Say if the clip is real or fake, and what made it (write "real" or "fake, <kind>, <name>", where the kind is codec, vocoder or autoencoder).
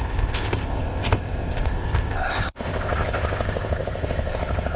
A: fake, codec, ZipCodec